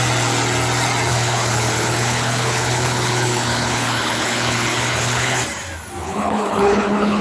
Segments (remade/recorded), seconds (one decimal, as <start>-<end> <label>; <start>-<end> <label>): 0.0-1.1 recorded; 1.1-5.4 remade; 5.4-6.0 recorded; 6.0-7.2 remade